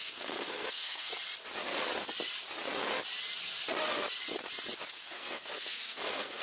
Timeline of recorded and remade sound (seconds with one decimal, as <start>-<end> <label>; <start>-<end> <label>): 0.0-1.1 remade; 1.1-4.9 recorded; 4.9-6.4 remade